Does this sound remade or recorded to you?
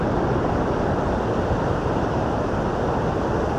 recorded